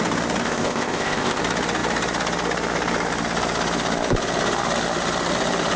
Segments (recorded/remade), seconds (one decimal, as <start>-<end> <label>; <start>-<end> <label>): 0.0-0.4 recorded; 0.4-1.4 remade; 1.4-5.8 recorded